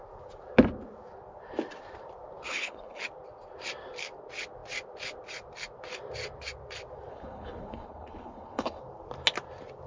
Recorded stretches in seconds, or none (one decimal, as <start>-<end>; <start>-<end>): 0.0-2.5; 3.0-7.1; 8.8-9.9